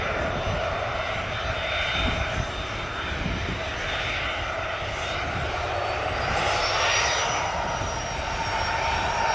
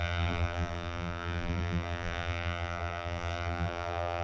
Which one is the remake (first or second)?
second